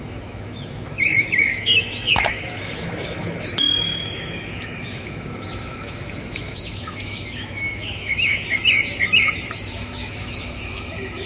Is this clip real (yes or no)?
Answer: no